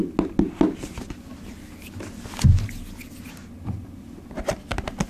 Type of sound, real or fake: real